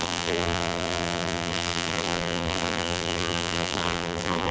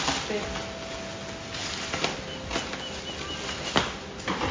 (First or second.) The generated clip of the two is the first